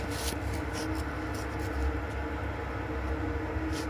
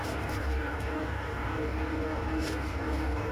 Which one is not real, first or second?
second